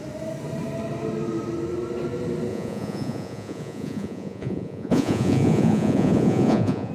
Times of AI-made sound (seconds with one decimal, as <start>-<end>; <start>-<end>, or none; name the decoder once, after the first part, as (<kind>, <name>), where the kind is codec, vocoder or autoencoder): 2.5-6.9 (vocoder, Vocos)